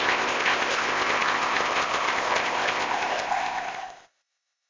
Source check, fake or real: fake